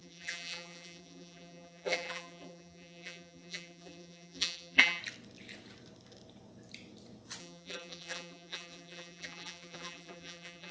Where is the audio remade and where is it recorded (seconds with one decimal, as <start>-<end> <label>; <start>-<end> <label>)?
0.0-5.0 remade; 5.0-7.4 recorded; 7.4-10.7 remade